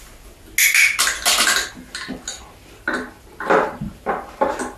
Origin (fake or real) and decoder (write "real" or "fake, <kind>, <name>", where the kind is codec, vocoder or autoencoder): real